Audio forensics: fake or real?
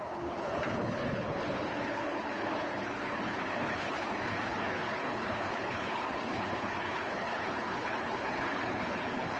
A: fake